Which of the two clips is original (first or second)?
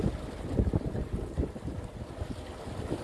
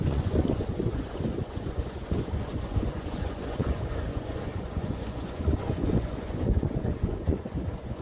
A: first